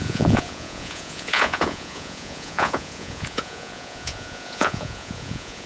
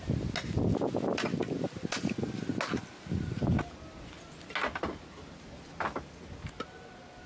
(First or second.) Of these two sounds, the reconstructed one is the first